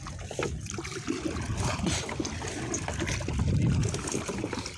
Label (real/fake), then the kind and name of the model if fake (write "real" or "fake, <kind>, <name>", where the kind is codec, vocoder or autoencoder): real